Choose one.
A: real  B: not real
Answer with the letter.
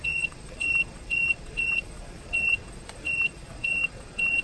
B